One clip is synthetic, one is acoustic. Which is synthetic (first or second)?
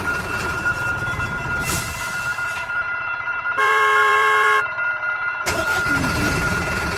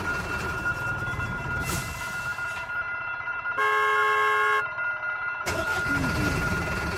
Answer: first